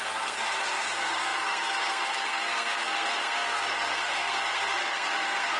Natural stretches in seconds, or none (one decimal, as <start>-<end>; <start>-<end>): none